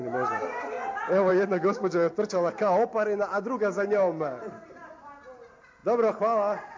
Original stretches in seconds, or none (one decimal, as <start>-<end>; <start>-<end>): 0.0-6.8